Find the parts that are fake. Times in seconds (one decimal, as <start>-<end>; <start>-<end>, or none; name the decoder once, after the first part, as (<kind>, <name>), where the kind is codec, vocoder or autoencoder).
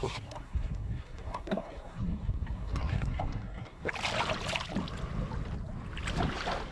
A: 0.0-3.9 (codec, SNAC)